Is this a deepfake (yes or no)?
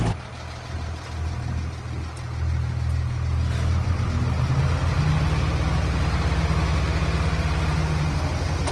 no